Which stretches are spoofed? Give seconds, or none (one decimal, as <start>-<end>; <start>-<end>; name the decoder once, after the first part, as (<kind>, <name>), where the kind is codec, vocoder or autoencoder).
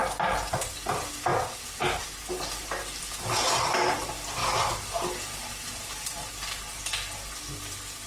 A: 0.7-1.3 (vocoder, BigVGAN v2); 2.3-8.1